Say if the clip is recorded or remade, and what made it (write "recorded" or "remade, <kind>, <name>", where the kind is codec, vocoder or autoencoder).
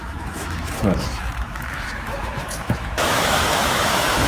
remade, autoencoder, DAC-VAE